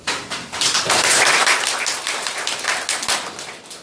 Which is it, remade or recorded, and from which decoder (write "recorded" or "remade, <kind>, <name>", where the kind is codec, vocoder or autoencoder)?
recorded